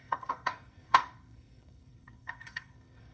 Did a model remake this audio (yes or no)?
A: yes